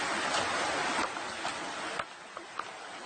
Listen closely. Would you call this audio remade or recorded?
recorded